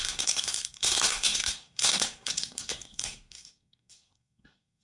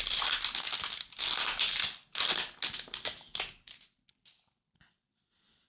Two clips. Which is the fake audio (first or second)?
first